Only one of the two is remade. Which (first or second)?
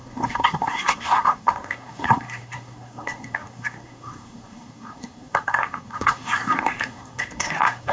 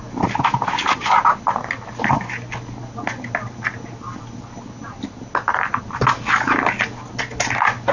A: first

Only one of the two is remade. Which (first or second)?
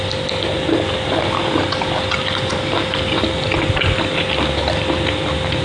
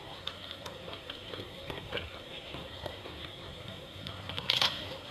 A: second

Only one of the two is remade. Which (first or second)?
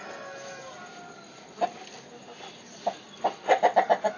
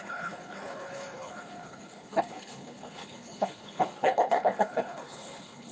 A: second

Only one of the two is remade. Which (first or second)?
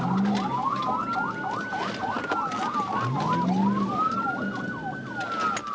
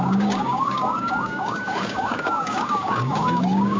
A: second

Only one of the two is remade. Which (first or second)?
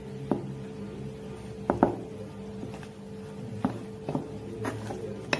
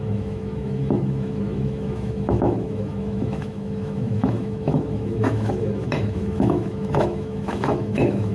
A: second